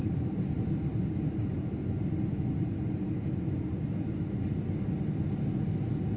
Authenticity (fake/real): real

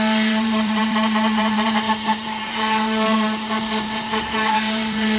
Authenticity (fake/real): fake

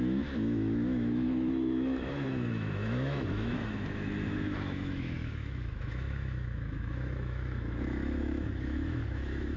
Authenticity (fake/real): fake